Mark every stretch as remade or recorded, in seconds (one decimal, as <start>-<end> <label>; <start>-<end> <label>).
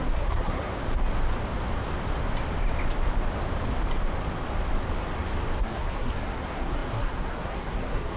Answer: 0.0-0.7 remade; 0.7-5.6 recorded; 5.6-8.2 remade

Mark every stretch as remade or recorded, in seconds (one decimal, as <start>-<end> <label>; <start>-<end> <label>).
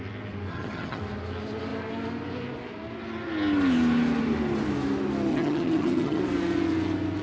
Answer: 0.0-0.5 recorded; 0.5-1.0 remade; 1.0-5.3 recorded; 5.3-6.2 remade; 6.2-7.2 recorded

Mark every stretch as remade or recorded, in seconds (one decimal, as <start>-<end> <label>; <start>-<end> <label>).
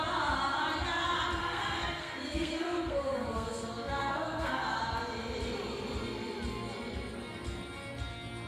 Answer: 0.0-1.4 recorded; 1.4-4.8 remade; 4.8-8.5 recorded